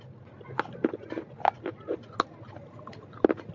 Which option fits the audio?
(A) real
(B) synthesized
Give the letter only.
A